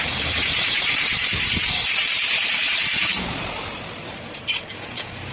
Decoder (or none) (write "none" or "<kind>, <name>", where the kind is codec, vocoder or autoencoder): vocoder, BigVGAN v2